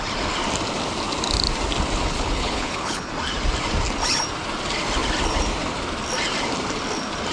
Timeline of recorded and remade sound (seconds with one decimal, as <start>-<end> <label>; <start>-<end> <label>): 0.0-2.0 recorded; 2.0-3.1 remade; 3.1-7.3 recorded